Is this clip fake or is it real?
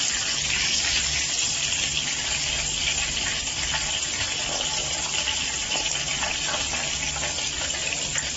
real